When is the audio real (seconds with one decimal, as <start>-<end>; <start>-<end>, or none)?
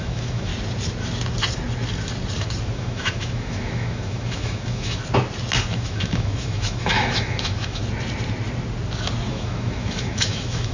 0.5-2.7; 5.0-5.7; 7.8-9.3